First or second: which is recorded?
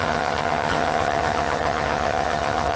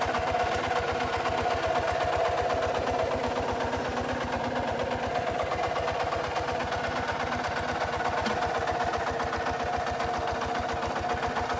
second